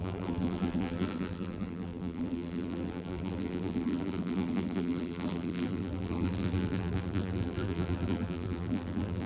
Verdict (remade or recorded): remade